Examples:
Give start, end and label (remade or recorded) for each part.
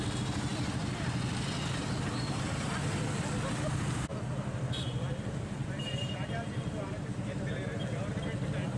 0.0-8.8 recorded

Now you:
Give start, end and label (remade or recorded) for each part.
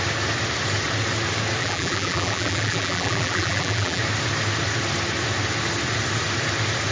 0.0-1.6 recorded; 1.6-4.0 remade; 4.0-6.9 recorded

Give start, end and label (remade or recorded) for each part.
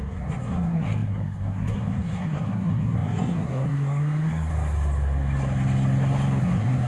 0.0-4.5 remade; 4.5-6.4 recorded; 6.4-6.9 remade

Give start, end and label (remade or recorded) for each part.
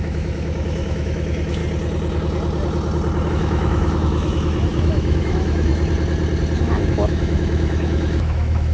0.0-1.6 remade; 1.6-3.3 recorded; 3.3-5.7 remade; 5.7-6.6 recorded; 6.6-8.7 remade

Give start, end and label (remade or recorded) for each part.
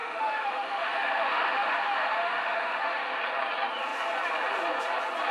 0.0-3.2 remade; 3.2-5.3 recorded